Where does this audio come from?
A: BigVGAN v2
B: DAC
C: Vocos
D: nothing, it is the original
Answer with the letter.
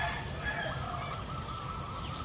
D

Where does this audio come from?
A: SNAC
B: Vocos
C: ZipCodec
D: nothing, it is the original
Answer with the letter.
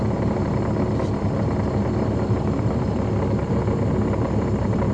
D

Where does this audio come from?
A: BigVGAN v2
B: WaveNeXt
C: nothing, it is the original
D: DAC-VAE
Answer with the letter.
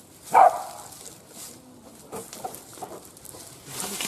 C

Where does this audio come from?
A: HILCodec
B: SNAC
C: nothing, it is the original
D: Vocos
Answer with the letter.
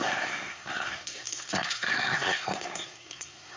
B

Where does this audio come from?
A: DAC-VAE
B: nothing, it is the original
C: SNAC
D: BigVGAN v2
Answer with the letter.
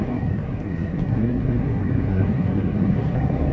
C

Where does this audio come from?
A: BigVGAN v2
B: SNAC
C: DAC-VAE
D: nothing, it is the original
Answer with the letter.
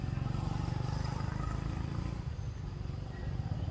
D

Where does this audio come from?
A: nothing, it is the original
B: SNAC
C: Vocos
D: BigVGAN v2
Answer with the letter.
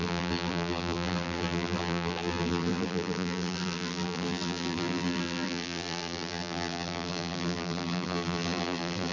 D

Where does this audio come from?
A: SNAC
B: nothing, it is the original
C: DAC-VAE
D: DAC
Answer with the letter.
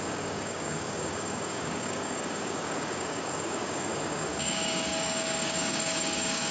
D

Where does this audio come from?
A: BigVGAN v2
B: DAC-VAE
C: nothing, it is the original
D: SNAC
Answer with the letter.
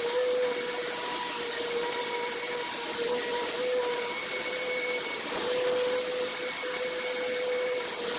C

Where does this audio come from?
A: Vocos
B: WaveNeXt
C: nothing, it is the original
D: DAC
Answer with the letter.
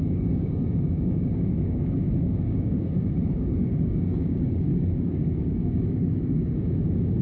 D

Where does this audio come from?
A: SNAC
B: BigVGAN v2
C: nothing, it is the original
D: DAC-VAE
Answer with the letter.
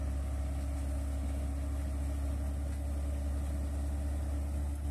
C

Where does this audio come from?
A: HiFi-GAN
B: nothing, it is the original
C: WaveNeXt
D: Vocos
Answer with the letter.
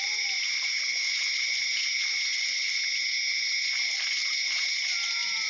B